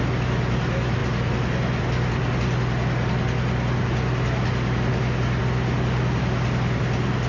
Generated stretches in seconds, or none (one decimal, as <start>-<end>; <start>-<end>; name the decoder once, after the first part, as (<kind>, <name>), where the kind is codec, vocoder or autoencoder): none